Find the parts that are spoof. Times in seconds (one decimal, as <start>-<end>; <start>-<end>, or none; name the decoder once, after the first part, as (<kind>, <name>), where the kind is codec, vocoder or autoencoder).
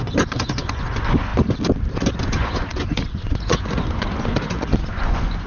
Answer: 0.0-1.3 (vocoder, Vocos); 2.2-5.5